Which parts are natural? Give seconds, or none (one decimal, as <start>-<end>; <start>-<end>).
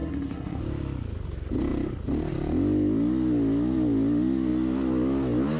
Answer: 0.6-5.6